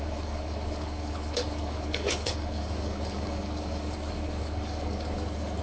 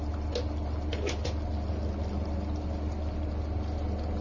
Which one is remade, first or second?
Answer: first